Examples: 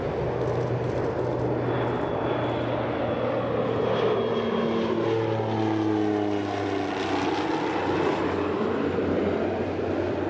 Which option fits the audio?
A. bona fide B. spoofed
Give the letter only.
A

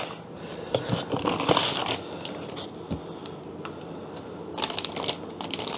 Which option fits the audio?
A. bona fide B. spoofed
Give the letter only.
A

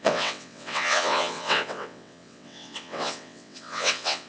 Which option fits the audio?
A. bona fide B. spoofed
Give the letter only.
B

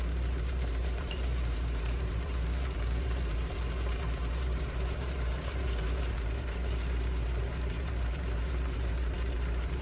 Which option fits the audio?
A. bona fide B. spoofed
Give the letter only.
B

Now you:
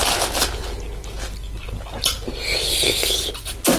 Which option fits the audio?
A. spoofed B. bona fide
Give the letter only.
B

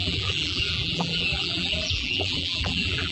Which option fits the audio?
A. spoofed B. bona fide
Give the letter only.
A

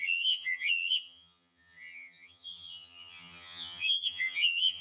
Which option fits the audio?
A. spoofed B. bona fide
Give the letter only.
A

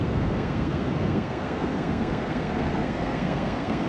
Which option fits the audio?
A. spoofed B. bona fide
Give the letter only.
A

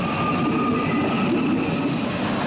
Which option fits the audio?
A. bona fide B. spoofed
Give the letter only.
A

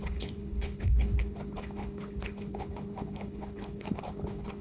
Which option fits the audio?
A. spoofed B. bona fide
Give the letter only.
A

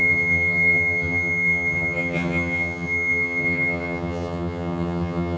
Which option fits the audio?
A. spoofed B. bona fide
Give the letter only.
A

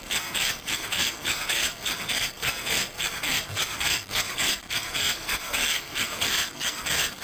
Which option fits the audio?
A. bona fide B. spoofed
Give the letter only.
B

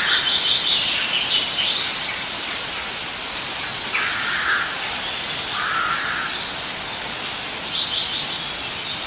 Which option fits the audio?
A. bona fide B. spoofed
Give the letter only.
A